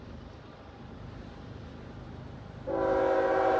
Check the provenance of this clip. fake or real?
real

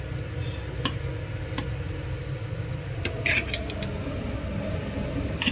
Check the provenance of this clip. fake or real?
real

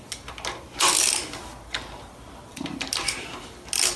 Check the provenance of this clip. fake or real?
real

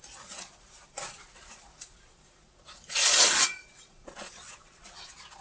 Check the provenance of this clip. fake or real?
fake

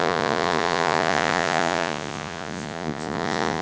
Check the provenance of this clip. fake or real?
fake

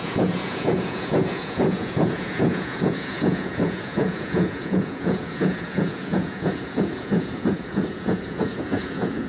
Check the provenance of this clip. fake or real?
fake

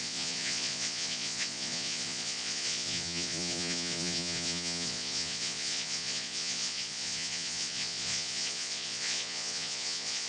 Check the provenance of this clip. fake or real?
fake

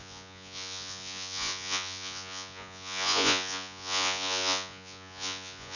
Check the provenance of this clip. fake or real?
fake